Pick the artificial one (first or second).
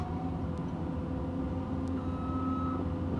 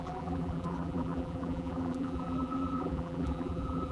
second